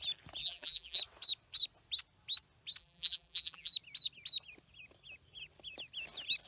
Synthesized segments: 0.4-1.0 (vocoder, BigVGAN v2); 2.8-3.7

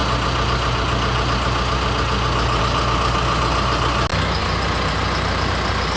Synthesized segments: none

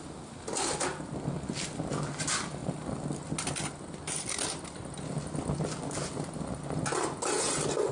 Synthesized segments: none

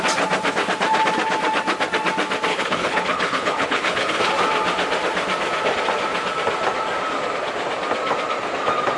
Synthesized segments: 2.5-4.2 (codec, HILCodec)